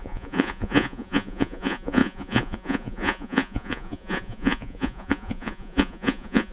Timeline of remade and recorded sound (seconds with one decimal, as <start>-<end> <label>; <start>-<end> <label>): 0.0-6.5 remade